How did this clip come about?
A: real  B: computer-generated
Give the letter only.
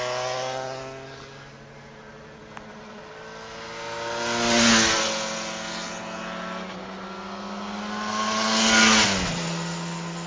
A